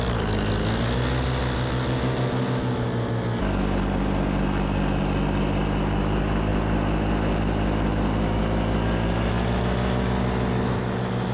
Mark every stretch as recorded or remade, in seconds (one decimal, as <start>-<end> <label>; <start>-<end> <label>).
0.0-11.3 recorded